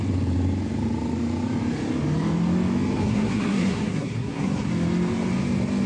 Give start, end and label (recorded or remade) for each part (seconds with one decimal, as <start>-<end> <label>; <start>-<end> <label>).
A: 0.0-3.0 recorded; 3.0-4.7 remade; 4.7-5.9 recorded